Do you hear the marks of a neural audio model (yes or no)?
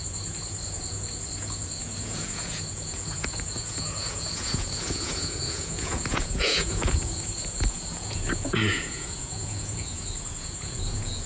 yes